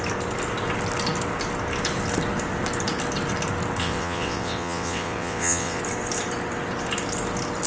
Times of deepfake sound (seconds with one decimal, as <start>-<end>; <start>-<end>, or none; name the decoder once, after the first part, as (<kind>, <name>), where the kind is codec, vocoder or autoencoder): 3.8-5.8 (vocoder, WaveNeXt)